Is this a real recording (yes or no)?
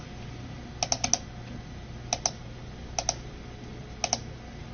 yes